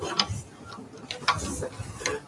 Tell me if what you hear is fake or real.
real